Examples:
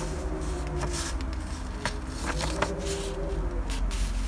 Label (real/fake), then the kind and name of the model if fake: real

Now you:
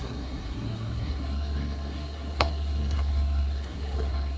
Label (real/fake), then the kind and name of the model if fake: fake, codec, SNAC